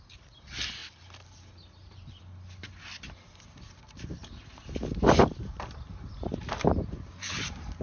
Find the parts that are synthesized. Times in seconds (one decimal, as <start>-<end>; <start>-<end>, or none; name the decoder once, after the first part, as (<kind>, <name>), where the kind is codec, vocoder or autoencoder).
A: 0.8-2.2 (vocoder, BigVGAN v2); 5.2-7.8